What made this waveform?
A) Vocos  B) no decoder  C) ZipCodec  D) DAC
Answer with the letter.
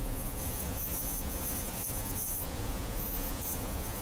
A